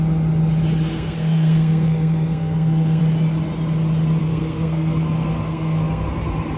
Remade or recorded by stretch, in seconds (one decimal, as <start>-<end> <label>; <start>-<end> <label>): 0.0-0.9 recorded; 0.9-3.0 remade; 3.0-4.2 recorded; 4.2-6.1 remade; 6.1-6.6 recorded